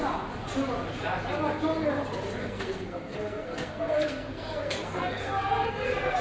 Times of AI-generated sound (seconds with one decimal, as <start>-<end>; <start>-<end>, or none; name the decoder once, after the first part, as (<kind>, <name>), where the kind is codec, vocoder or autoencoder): 2.4-6.2 (codec, SNAC)